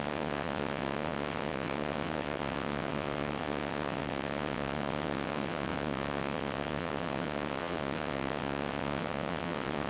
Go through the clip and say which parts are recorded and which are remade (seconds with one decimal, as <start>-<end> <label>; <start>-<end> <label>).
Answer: 0.0-9.9 remade

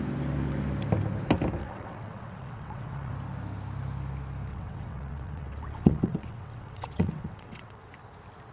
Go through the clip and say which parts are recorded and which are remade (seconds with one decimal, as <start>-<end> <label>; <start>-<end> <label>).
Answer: 0.0-1.6 recorded; 1.6-3.1 remade; 3.1-4.5 recorded; 4.5-7.9 remade; 7.9-8.5 recorded

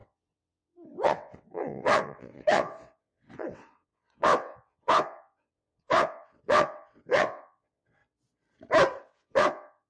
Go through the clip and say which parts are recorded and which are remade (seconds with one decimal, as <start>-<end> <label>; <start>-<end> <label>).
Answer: 0.0-8.0 remade; 8.0-9.0 recorded; 9.0-9.9 remade

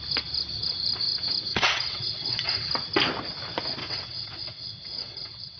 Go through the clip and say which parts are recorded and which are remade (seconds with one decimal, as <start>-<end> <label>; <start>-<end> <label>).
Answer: 0.0-1.5 recorded; 1.5-2.7 remade; 2.7-3.8 recorded; 3.8-5.6 remade

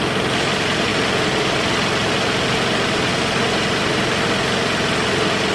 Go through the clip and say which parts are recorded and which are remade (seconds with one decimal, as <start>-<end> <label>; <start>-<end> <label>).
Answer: 0.0-5.5 recorded